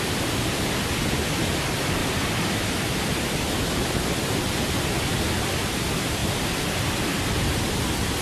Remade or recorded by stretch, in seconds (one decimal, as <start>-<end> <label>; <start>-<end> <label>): 0.0-6.2 recorded; 6.2-7.1 remade; 7.1-8.2 recorded